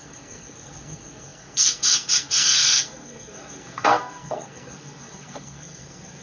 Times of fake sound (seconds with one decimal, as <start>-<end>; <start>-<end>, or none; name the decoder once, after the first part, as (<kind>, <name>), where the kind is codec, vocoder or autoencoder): 0.0-6.2 (codec, SNAC)